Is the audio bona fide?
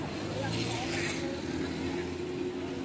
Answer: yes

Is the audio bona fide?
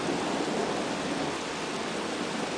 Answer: yes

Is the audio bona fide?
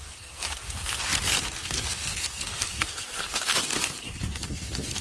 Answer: no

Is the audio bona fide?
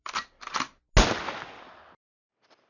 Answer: yes